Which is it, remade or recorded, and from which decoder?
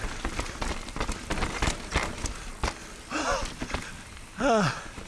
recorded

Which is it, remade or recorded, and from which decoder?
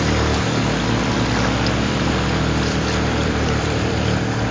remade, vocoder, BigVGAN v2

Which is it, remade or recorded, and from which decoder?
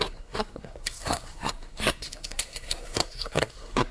remade, codec, SNAC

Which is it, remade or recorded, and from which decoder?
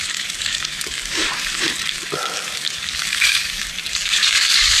remade, codec, DAC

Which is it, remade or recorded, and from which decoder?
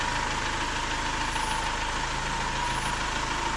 recorded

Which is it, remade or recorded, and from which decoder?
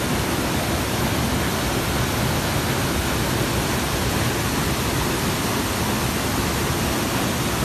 recorded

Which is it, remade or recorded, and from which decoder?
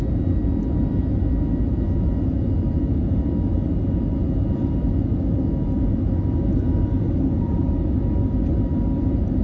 recorded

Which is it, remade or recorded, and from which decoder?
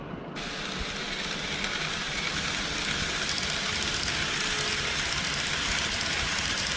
recorded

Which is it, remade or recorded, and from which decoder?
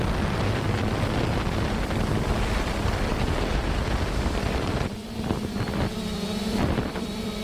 remade, vocoder, BigVGAN v2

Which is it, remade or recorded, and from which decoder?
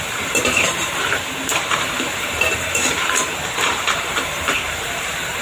remade, vocoder, BigVGAN v2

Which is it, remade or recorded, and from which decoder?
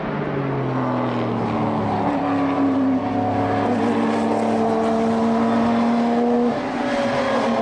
recorded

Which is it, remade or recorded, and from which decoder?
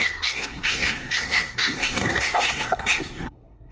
remade, codec, SNAC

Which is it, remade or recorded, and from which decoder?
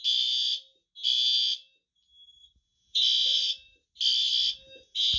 recorded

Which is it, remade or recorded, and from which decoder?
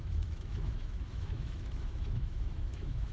remade, autoencoder, DAC-VAE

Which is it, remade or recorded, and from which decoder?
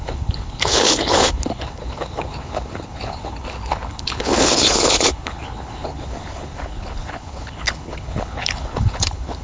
remade, codec, HILCodec